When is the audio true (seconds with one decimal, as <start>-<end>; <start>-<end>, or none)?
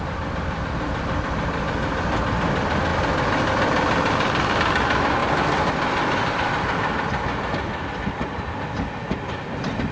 0.0-9.9